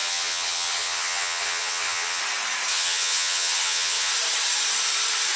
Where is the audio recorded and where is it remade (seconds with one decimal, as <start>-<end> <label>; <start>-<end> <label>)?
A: 0.0-2.2 remade; 2.2-2.7 recorded; 2.7-4.1 remade; 4.1-5.4 recorded